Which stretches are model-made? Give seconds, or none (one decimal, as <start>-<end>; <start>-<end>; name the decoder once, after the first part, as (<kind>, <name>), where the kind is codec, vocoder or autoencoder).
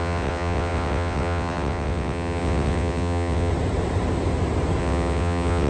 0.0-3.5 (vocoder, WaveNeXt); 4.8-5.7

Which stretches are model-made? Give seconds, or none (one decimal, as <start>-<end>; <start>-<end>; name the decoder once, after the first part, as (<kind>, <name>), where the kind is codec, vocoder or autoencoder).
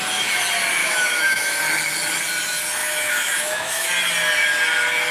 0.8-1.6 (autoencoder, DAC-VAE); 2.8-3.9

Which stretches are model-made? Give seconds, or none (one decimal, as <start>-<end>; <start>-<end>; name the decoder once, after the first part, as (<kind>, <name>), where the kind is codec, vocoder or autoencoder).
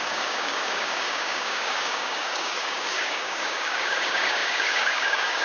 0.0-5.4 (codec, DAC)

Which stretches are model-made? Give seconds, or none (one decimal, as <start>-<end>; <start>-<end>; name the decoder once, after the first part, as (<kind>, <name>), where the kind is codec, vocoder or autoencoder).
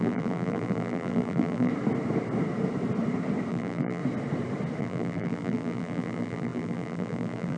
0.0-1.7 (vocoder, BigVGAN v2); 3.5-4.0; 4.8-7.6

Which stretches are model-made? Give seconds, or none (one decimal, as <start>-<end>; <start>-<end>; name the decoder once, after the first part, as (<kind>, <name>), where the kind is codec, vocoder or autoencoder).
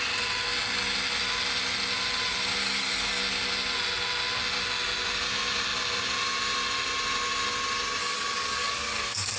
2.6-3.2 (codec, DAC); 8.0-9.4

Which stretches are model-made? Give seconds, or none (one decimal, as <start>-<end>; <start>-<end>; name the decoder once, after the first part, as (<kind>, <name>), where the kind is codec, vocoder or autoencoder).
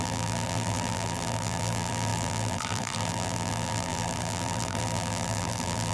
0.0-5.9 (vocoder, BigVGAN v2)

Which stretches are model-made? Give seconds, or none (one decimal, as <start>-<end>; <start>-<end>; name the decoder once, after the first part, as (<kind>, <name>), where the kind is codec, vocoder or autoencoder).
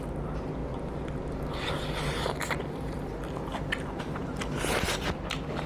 none